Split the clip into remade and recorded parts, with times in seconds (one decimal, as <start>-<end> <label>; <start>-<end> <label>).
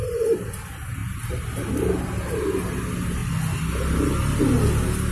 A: 0.0-5.1 recorded